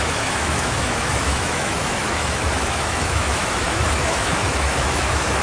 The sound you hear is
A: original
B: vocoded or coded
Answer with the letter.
B